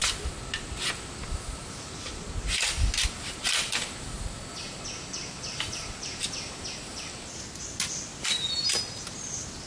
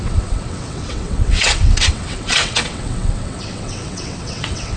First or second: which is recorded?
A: first